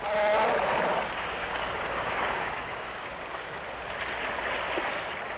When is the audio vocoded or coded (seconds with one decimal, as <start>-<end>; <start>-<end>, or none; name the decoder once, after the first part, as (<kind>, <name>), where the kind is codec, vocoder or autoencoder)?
0.9-3.6 (codec, DAC)